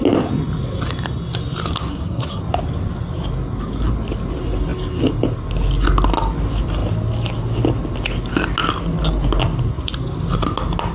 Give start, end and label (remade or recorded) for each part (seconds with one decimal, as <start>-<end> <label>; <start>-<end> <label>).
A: 0.0-1.9 recorded; 1.9-2.4 remade; 2.4-10.9 recorded